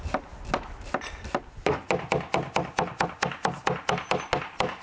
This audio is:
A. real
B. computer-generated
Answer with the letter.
A